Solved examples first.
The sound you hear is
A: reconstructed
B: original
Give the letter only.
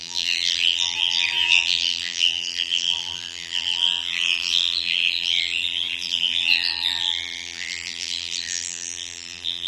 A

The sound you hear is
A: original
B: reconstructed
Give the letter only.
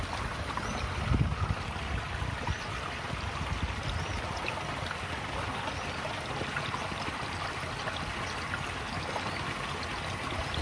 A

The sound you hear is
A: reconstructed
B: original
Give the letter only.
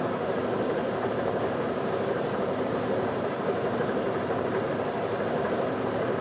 A